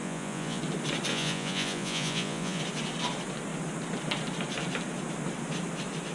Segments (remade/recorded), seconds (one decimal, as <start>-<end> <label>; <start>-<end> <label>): 0.0-0.6 remade; 0.6-1.1 recorded; 1.1-2.6 remade; 2.6-6.1 recorded

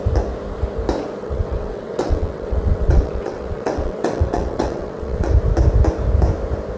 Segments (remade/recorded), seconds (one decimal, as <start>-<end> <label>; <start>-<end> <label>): 0.0-1.2 recorded; 1.2-5.3 remade; 5.3-6.8 recorded

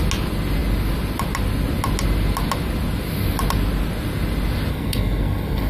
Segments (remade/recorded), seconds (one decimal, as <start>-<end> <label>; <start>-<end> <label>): 0.0-4.7 recorded; 4.7-5.7 remade